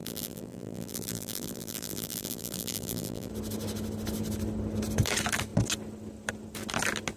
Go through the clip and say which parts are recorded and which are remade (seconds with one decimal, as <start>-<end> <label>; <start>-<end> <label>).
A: 0.0-3.3 remade; 3.3-7.2 recorded